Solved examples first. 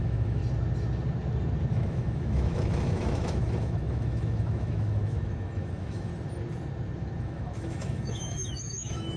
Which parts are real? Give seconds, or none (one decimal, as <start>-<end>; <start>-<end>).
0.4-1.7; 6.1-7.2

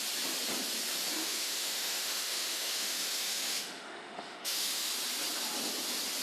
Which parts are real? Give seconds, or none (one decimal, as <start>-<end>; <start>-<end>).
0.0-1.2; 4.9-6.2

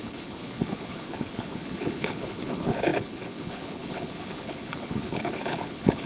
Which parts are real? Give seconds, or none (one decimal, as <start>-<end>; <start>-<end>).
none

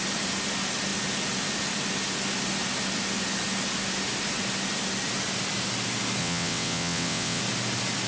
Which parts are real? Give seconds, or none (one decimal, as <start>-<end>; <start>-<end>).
0.0-6.2; 7.4-8.1

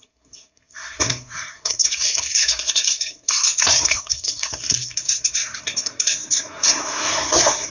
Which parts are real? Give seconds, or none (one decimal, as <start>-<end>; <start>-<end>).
none